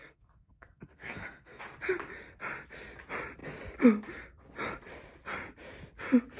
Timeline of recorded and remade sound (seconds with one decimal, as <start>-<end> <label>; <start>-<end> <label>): 0.0-1.6 remade; 1.6-6.4 recorded